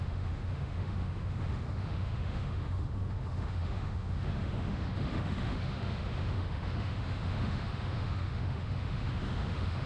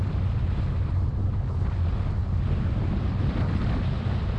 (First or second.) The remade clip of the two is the first